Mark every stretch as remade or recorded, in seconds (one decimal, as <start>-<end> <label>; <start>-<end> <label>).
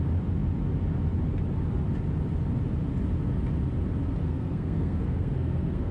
0.0-4.2 recorded; 4.2-5.9 remade